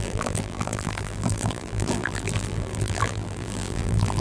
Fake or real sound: fake